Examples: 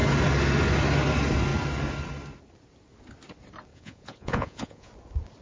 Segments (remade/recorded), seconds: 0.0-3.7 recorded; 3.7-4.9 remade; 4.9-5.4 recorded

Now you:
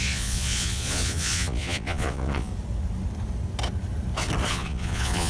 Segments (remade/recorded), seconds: 0.0-2.5 remade; 2.5-4.5 recorded; 4.5-5.3 remade

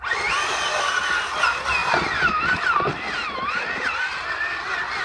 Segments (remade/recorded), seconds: 0.0-5.0 recorded

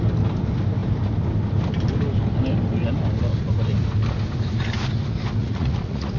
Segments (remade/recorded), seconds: 0.0-5.4 recorded; 5.4-6.2 remade

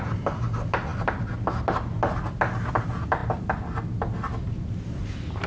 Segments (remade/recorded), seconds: 0.0-5.5 recorded

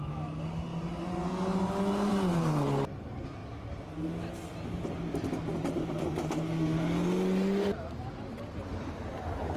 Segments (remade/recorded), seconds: 0.0-9.6 recorded

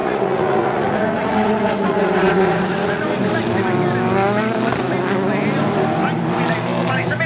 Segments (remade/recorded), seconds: 0.0-3.0 remade; 3.0-7.3 recorded